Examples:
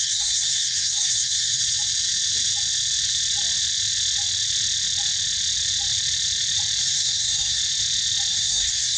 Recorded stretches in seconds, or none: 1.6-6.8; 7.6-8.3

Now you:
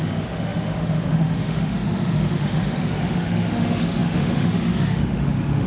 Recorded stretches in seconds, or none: none

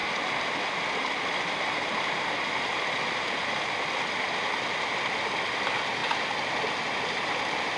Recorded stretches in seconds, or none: 0.0-7.8

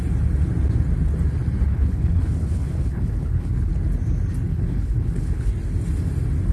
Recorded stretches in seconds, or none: 0.0-1.6; 3.7-4.5; 5.5-6.5

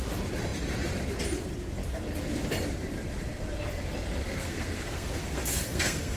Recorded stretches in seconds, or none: 0.0-4.2

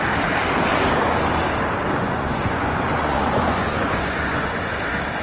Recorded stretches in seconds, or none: 0.0-2.0; 4.8-5.2

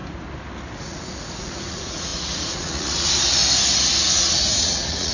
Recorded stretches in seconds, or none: 0.0-0.8; 3.4-4.0

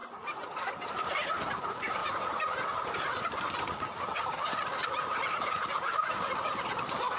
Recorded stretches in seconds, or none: 0.0-0.6; 2.0-4.2